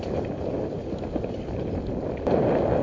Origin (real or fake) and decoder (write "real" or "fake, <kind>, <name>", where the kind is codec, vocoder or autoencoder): real